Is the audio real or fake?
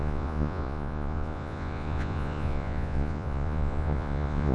fake